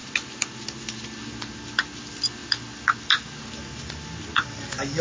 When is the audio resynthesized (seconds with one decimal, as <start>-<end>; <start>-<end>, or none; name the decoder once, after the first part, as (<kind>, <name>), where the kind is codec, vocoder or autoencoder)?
none